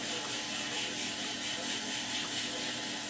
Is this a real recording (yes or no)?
yes